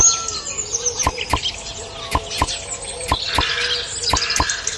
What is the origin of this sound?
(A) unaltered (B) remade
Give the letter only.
A